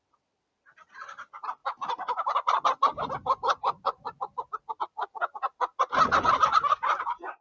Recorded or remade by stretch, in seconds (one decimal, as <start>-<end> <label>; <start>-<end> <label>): 0.0-7.4 recorded